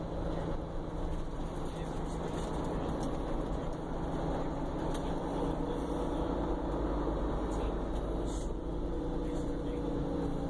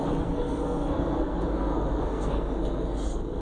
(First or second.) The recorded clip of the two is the first